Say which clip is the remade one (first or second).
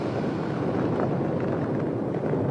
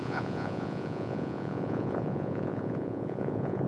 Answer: second